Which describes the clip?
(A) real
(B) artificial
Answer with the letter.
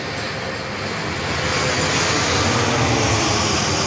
A